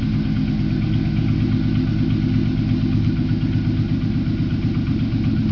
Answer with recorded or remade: recorded